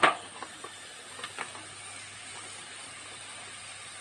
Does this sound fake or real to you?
real